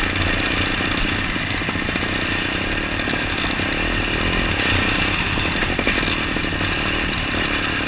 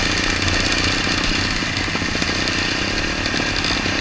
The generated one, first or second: first